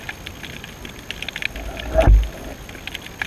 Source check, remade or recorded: recorded